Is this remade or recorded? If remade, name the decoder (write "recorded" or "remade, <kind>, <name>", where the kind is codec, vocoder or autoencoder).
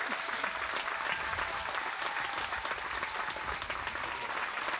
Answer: recorded